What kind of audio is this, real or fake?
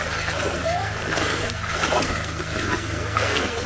fake